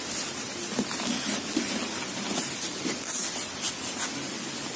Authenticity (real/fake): real